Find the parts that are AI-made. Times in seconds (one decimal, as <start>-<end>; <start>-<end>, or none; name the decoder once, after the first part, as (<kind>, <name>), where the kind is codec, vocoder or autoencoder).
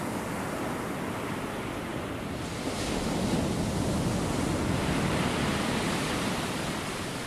none